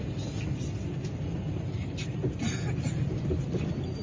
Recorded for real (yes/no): yes